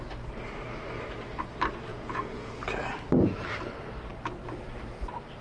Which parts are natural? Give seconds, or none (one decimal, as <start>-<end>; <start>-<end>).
0.0-1.9; 2.6-5.4